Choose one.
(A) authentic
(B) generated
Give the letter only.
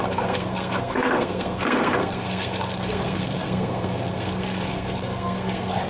B